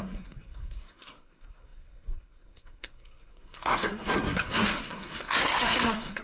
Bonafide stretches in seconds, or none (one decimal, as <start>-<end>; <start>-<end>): none